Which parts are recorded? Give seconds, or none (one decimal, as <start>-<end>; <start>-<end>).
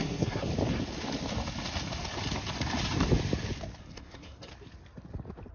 0.5-3.8; 4.5-5.5